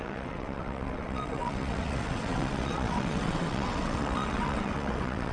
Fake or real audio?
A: fake